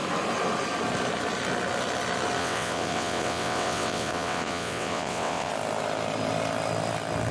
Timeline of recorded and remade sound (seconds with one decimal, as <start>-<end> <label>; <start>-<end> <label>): 0.0-2.4 recorded; 2.4-5.5 remade; 5.5-7.3 recorded